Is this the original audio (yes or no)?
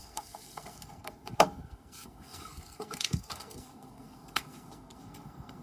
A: no